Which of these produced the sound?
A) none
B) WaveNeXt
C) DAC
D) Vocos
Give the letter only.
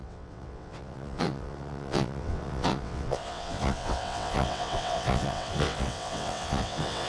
B